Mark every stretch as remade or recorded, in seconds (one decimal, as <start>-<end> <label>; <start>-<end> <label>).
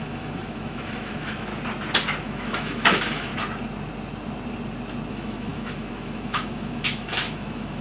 0.0-1.5 remade; 1.5-2.2 recorded; 2.2-3.3 remade; 3.3-5.1 recorded; 5.1-7.8 remade